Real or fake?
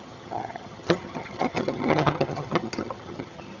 fake